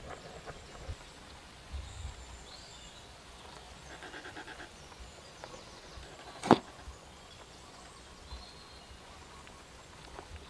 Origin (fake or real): fake